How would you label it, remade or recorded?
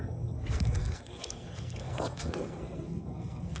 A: remade